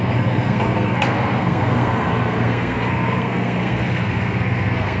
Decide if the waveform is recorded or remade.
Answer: remade